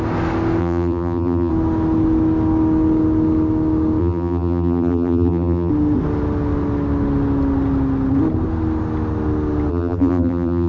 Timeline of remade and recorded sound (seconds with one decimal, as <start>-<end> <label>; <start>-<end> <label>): 0.0-0.6 recorded; 0.6-1.5 remade; 1.5-4.0 recorded; 4.0-5.7 remade; 5.7-9.7 recorded; 9.7-10.7 remade